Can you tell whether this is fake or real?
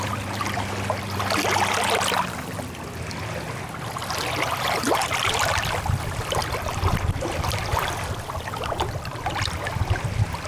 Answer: real